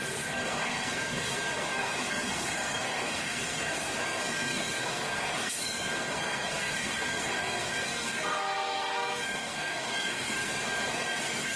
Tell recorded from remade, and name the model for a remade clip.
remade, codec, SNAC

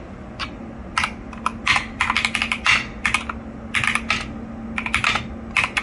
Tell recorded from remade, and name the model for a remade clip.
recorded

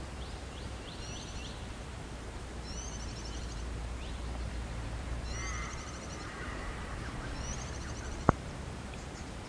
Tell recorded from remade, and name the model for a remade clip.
remade, vocoder, BigVGAN v2